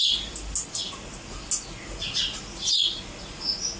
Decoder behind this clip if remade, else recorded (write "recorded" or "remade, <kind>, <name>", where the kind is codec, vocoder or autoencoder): recorded